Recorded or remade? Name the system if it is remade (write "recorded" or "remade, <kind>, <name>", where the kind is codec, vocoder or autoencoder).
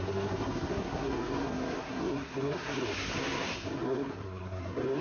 remade, codec, SNAC